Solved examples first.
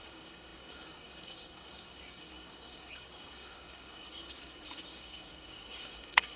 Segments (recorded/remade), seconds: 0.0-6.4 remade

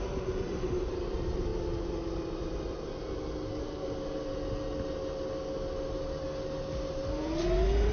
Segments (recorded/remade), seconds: 0.0-7.9 recorded

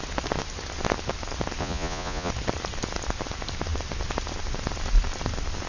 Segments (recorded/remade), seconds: 0.0-1.6 recorded; 1.6-2.3 remade; 2.3-5.7 recorded

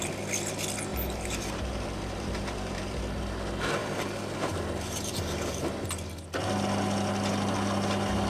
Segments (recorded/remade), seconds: 0.0-0.9 recorded; 0.9-3.0 remade; 3.0-3.8 recorded; 3.8-5.7 remade; 5.7-8.3 recorded